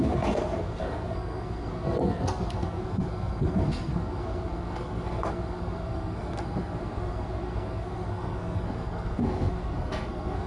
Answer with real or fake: fake